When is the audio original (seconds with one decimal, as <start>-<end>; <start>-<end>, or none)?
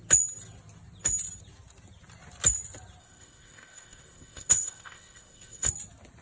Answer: 0.0-3.0; 5.7-6.2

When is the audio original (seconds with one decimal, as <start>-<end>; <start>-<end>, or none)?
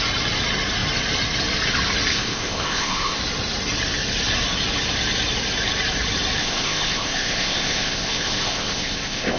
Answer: 0.0-2.1; 3.2-6.4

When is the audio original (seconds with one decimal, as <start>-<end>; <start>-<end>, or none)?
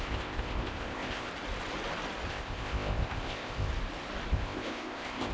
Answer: 1.3-2.3; 3.7-4.3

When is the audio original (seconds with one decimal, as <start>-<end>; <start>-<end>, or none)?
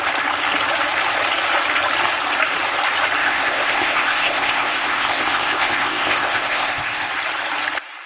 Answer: 0.0-3.2; 7.1-8.1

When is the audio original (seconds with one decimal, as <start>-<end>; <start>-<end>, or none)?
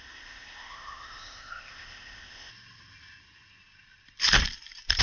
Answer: 2.5-5.0